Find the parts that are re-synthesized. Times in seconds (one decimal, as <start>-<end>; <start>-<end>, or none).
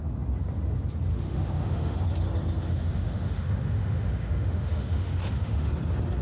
1.1-2.0; 2.7-5.7